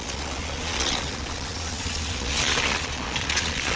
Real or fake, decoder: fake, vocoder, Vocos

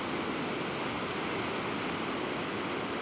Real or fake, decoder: real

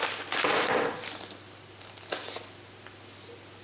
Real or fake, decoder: real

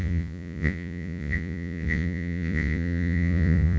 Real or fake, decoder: fake, vocoder, Vocos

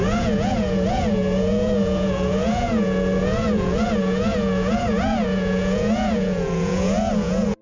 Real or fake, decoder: fake, vocoder, Vocos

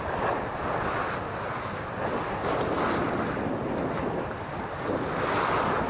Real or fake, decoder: real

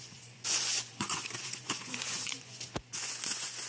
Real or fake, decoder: fake, vocoder, Vocos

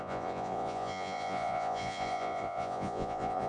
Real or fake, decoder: fake, vocoder, Vocos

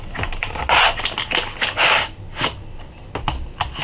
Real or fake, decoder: real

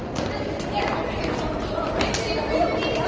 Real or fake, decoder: real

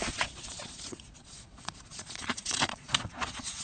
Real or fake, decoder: fake, vocoder, Vocos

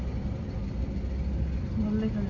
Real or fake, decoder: real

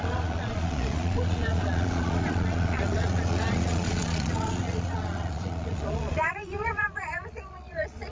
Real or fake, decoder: fake, vocoder, Vocos